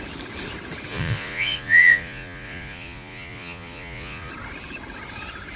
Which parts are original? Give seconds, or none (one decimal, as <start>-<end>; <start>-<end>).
0.0-0.9; 4.3-5.6